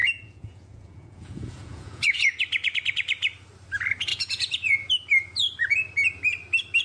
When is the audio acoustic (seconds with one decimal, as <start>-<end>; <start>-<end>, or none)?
2.4-4.1; 4.9-6.8

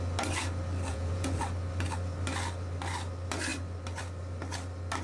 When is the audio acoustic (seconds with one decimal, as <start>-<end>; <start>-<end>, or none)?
0.0-0.9; 1.4-5.0

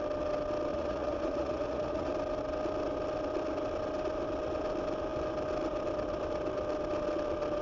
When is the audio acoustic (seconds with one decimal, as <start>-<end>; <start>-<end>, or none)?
0.0-0.7; 2.1-7.6

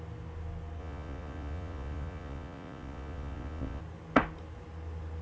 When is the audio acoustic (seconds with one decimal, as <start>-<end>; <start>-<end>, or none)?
0.0-0.8; 3.8-5.2

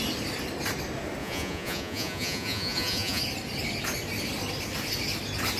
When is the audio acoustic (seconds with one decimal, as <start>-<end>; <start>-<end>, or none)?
0.0-1.2; 3.2-5.6